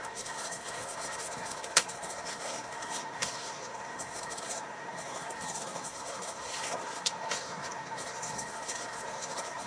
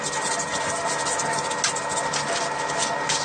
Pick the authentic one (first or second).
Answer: second